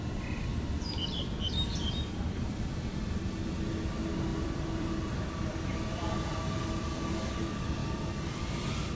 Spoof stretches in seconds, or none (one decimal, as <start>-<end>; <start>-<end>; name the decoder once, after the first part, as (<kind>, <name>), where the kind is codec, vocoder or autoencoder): 0.5-3.0 (vocoder, BigVGAN v2); 4.3-4.9; 7.8-8.4